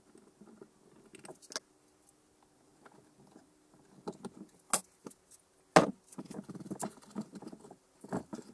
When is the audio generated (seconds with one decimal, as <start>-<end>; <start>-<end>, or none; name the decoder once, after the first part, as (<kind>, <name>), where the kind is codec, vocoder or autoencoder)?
none